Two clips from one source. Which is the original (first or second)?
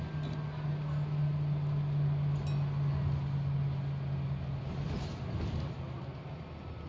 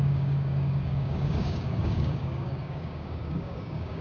first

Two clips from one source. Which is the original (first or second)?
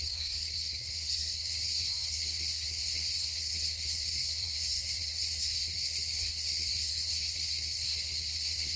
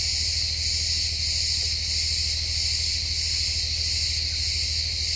second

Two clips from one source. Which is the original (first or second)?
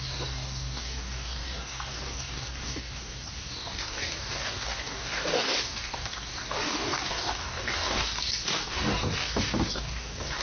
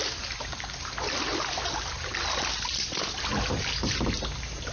second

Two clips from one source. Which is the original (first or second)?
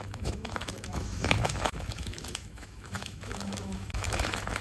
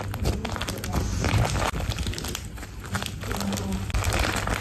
second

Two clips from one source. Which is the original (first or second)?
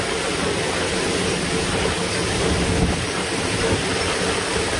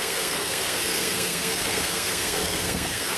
first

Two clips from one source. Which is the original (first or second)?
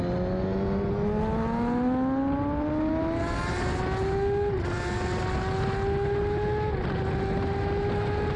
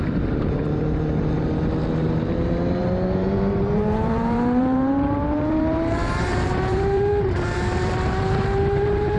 first